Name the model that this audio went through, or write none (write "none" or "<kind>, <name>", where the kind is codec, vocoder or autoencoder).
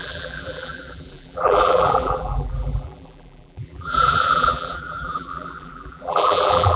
vocoder, BigVGAN v2